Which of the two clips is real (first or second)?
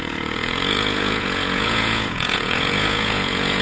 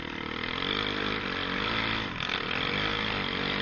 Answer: second